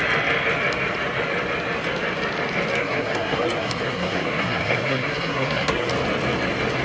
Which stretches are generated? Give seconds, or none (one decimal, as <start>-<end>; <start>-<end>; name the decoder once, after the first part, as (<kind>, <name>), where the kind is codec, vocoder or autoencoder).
2.8-5.9 (codec, SNAC)